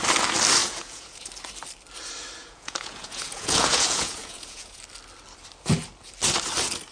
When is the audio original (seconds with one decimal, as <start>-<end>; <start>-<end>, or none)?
0.0-0.6; 1.3-2.4; 4.8-6.9